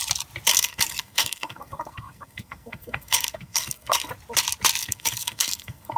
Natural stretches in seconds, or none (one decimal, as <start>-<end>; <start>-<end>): 0.0-0.5; 4.1-4.8